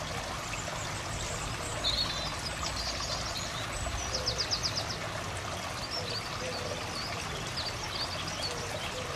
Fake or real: real